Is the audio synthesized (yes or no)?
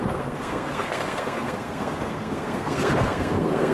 yes